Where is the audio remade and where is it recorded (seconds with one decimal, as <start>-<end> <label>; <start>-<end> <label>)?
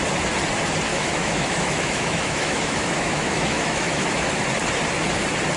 0.0-0.9 recorded; 0.9-4.3 remade; 4.3-5.6 recorded